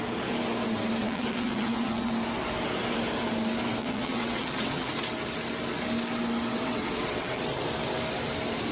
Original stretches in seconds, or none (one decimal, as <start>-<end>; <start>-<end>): 0.0-1.0; 2.1-3.8; 4.9-6.5; 7.4-8.7